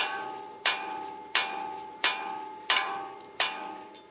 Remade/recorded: remade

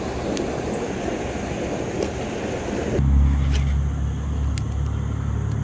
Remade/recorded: recorded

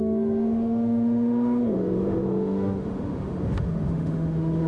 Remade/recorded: remade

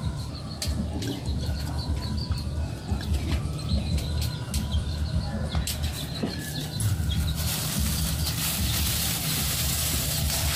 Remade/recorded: recorded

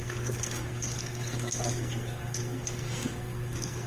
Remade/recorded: remade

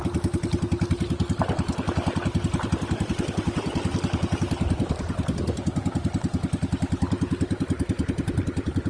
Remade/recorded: recorded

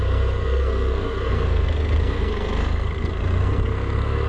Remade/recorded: remade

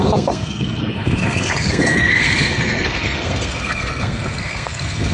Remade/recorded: remade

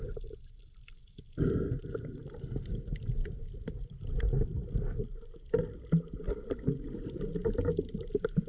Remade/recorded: recorded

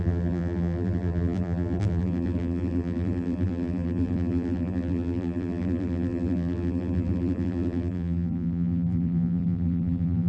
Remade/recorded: remade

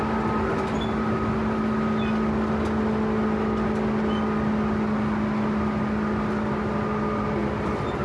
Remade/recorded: recorded